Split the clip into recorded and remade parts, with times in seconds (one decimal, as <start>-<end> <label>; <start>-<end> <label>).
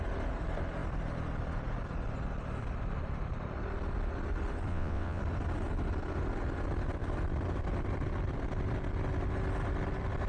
0.0-4.7 recorded; 4.7-5.2 remade; 5.2-10.3 recorded